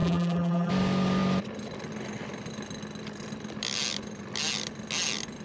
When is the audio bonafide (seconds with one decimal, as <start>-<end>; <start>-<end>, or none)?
0.7-5.4